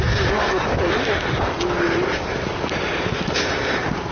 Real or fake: real